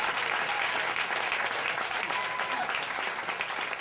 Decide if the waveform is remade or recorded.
recorded